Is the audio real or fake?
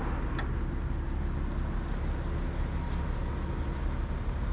real